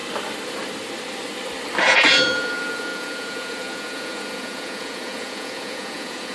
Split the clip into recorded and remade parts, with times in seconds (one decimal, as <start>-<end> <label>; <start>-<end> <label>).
0.0-1.8 recorded; 1.8-6.3 remade